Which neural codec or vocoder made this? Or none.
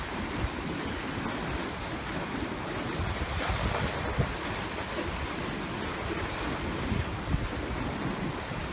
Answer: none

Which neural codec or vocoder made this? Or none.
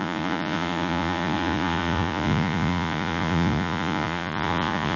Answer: vocoder, Vocos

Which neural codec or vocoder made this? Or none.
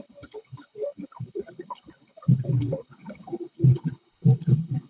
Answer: codec, HILCodec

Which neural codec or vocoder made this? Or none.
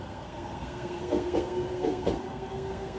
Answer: codec, SNAC